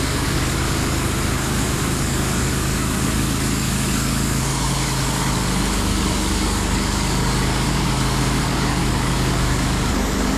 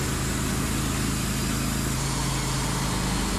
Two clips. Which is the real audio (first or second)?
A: second